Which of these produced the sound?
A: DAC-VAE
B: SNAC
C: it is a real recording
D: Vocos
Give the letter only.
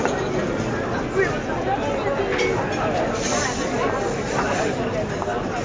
C